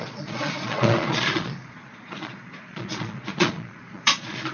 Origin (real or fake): fake